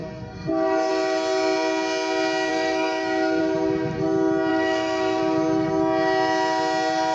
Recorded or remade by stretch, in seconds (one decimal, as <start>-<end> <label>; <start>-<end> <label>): 0.0-0.9 remade; 0.9-2.5 recorded; 2.5-3.4 remade; 3.4-4.5 recorded; 4.5-5.2 remade; 5.2-7.1 recorded